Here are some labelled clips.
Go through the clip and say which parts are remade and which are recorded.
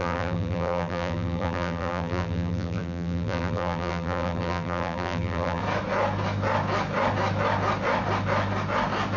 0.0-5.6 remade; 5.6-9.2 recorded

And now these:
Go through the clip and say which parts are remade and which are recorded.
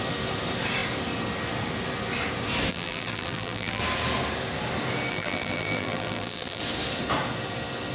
0.0-2.7 recorded; 2.7-3.8 remade; 3.8-5.1 recorded; 5.1-6.6 remade; 6.6-7.9 recorded